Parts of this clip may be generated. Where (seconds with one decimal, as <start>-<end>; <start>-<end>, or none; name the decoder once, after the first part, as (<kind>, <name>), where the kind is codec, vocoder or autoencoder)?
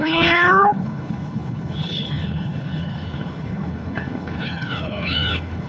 0.0-5.7 (codec, HILCodec)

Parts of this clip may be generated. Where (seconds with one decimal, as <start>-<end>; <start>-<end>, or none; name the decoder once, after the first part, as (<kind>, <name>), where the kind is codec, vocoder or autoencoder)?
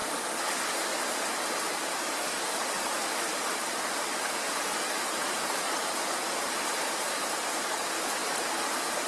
4.2-9.1 (vocoder, BigVGAN v2)